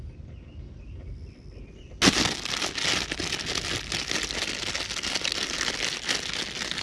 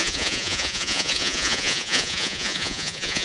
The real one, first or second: first